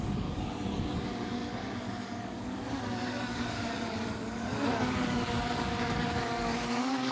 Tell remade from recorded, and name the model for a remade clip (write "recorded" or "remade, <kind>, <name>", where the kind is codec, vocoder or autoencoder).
remade, codec, DAC